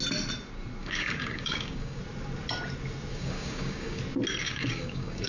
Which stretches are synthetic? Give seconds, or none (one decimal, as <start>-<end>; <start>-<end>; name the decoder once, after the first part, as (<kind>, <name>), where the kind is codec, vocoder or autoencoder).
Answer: 0.8-2.0 (codec, DAC); 3.1-4.0; 4.4-5.3